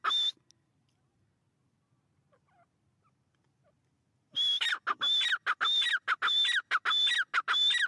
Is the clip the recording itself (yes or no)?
yes